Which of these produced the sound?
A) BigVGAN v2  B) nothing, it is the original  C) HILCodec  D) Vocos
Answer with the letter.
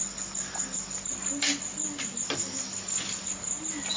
B